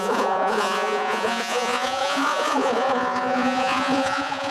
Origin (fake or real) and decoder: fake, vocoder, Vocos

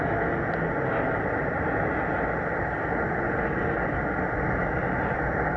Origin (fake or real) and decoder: real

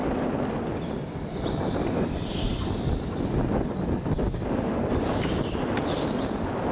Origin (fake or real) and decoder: real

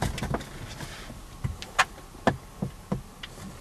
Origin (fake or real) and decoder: real